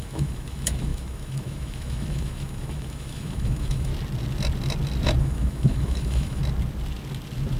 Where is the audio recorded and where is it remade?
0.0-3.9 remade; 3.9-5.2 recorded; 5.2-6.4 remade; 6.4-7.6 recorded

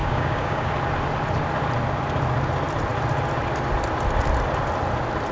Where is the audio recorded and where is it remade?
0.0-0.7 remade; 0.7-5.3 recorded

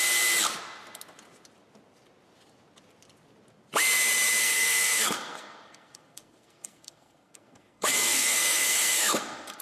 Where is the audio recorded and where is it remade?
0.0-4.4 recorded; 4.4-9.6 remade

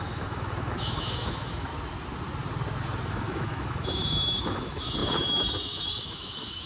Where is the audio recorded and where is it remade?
0.0-1.7 remade; 1.7-3.1 recorded; 3.1-6.7 remade

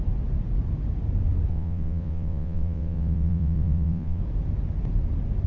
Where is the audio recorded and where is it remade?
0.0-1.5 recorded; 1.5-4.2 remade; 4.2-5.5 recorded

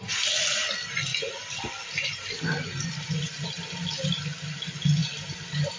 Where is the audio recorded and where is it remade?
0.0-5.8 recorded

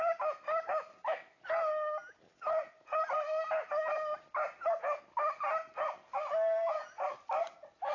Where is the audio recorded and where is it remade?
0.0-0.9 recorded; 0.9-1.4 remade; 1.4-7.9 recorded